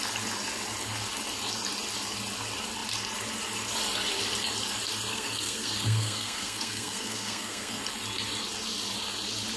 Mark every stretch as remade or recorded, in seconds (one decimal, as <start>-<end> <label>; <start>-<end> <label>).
0.0-5.1 recorded; 5.1-7.8 remade; 7.8-9.6 recorded